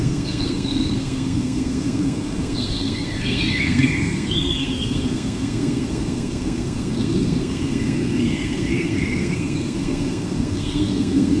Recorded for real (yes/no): no